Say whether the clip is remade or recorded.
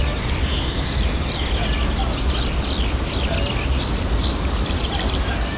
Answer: recorded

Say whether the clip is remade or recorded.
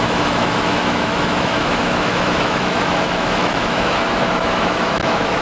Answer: remade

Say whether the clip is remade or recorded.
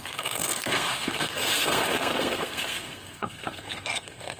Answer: remade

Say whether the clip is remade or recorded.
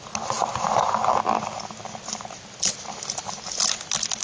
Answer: recorded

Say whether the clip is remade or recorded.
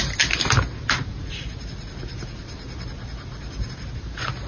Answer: recorded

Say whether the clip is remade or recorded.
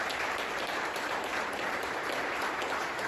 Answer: remade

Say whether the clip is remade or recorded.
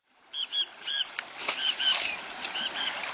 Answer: recorded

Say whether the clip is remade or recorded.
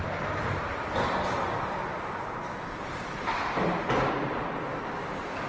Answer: recorded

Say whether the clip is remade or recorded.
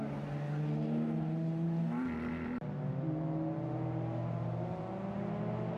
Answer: recorded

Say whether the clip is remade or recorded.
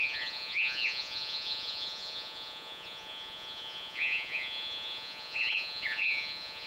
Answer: remade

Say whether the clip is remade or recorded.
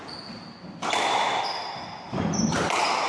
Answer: recorded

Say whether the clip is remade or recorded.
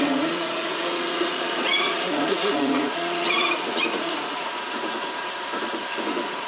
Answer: remade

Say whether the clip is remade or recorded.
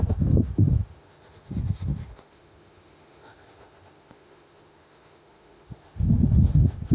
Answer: remade